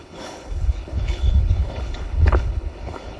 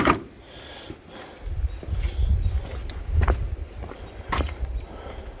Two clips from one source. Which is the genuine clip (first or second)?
second